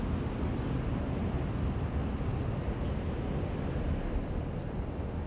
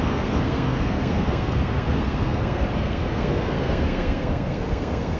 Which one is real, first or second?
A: first